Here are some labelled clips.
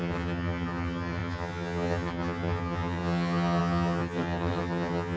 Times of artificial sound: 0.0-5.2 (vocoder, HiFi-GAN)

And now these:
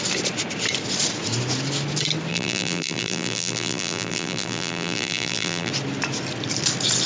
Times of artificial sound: 2.3-5.7 (vocoder, BigVGAN v2)

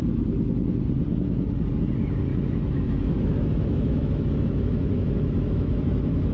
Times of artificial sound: 2.3-6.3 (autoencoder, DAC-VAE)

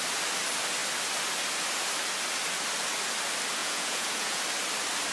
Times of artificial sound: 3.6-4.4 (vocoder, Vocos)